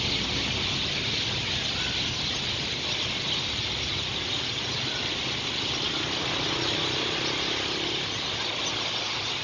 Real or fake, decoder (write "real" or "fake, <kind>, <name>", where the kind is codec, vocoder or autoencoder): real